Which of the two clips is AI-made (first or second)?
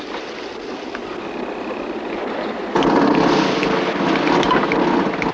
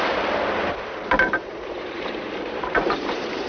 second